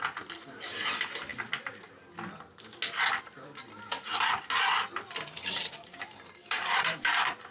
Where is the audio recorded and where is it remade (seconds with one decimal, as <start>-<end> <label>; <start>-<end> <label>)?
0.0-1.3 remade; 1.3-5.5 recorded; 5.5-7.5 remade